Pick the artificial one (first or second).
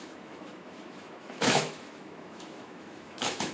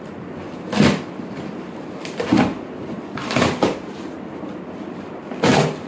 first